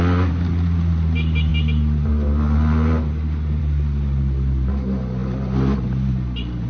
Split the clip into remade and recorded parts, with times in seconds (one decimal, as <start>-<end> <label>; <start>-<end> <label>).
0.0-6.7 recorded

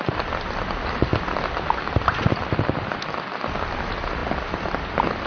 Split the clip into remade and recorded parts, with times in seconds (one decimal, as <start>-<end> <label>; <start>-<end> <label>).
0.0-1.1 recorded; 1.1-3.8 remade; 3.8-4.2 recorded; 4.2-4.7 remade; 4.7-5.3 recorded

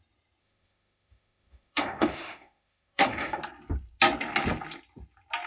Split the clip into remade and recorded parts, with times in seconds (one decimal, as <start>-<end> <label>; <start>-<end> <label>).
0.0-0.4 recorded; 0.4-3.4 remade; 3.4-5.5 recorded

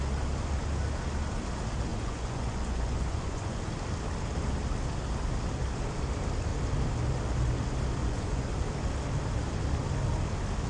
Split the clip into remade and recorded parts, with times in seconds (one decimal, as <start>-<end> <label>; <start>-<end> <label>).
0.0-1.9 recorded; 1.9-3.6 remade; 3.6-8.0 recorded; 8.0-8.5 remade; 8.5-10.7 recorded

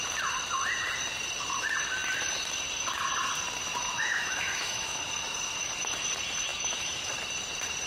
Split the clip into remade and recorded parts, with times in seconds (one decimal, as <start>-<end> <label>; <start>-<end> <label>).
0.0-3.9 recorded; 3.9-5.0 remade; 5.0-6.5 recorded; 6.5-7.1 remade; 7.1-7.9 recorded

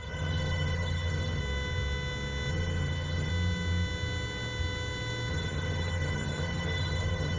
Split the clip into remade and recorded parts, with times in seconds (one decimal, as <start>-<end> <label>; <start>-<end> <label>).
0.0-1.4 remade; 1.4-2.5 recorded; 2.5-3.3 remade; 3.3-5.3 recorded; 5.3-7.4 remade